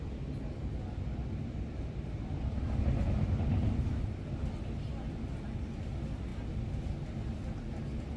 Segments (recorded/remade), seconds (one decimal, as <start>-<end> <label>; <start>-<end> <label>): 0.0-8.2 recorded